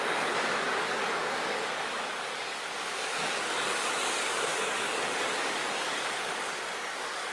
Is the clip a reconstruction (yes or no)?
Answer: yes